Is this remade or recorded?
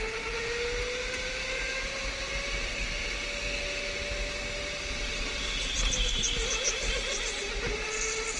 recorded